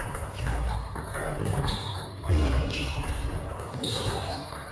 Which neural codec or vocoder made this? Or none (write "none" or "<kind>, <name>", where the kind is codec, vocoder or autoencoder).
codec, SNAC